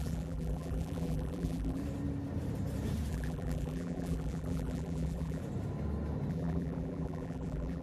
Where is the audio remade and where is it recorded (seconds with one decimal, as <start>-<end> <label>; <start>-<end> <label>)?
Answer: 0.0-1.8 remade; 1.8-3.1 recorded; 3.1-5.4 remade; 5.4-6.3 recorded; 6.3-7.8 remade